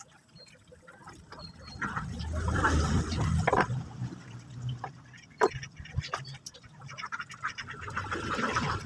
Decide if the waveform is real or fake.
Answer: real